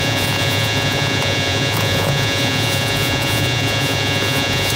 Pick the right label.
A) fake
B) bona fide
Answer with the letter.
A